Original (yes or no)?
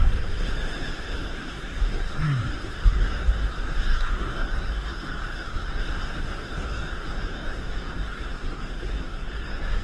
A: no